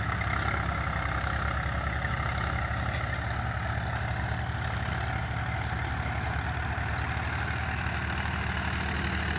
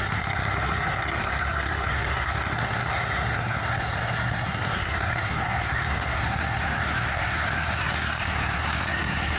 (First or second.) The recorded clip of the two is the first